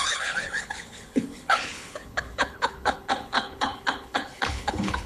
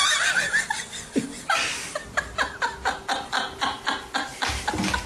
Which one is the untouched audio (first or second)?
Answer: second